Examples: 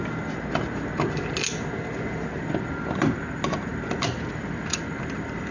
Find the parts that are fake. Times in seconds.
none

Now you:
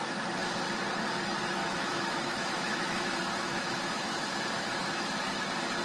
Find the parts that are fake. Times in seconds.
1.6-4.2 (autoencoder, DAC-VAE); 4.8-5.3

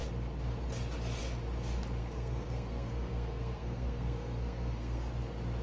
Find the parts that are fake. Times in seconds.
2.0-5.1 (codec, SNAC)

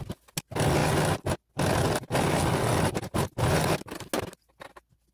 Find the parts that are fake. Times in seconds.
none

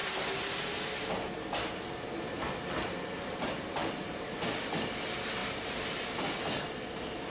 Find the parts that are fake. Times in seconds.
none

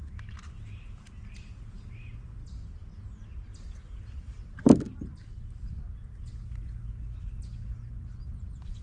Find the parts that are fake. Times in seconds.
4.3-4.8 (vocoder, BigVGAN v2)

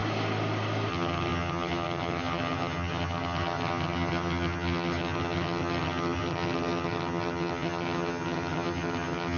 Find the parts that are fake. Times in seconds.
0.9-9.4 (vocoder, HiFi-GAN)

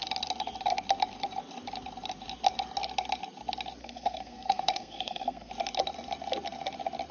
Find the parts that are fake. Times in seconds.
3.8-5.5 (codec, SNAC)